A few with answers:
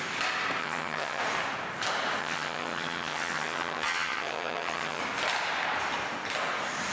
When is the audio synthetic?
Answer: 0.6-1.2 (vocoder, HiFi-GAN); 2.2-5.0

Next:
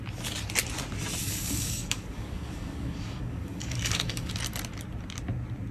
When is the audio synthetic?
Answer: 1.2-4.3 (codec, DAC)

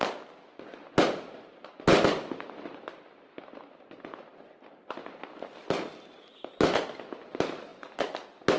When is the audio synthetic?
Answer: none

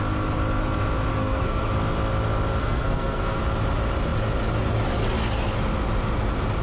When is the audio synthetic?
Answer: 1.1-1.7 (codec, SNAC); 2.6-3.4

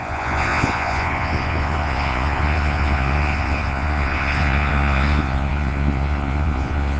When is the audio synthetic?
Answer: 0.0-7.0 (vocoder, Vocos)

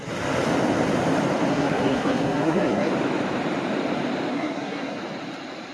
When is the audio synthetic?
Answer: 1.5-2.9 (codec, SNAC); 4.3-5.0